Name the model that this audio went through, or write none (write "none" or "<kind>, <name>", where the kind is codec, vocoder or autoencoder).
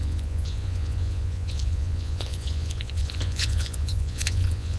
vocoder, Vocos